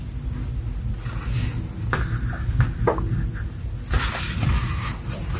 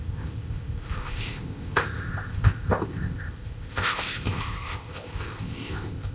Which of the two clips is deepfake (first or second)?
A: second